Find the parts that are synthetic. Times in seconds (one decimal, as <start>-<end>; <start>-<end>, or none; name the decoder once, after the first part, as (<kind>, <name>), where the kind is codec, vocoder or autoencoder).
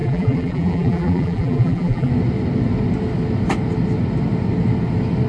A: 0.0-2.1 (vocoder, BigVGAN v2)